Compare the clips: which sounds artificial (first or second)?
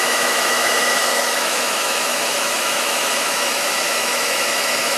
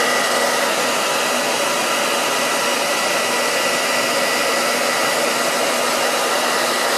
first